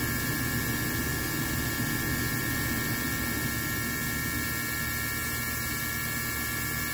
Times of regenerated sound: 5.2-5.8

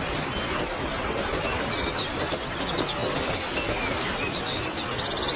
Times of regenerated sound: none

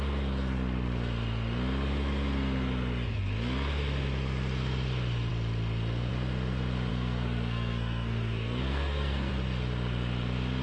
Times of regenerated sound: 6.9-9.3

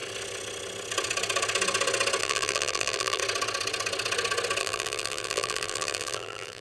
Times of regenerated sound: 2.2-3.2; 4.6-6.6

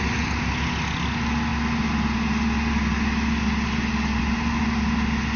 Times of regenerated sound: none